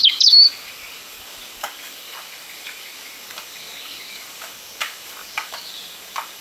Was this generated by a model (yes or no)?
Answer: yes